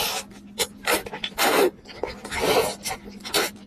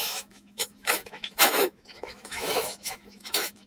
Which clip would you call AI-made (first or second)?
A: second